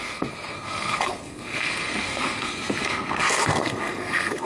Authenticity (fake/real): fake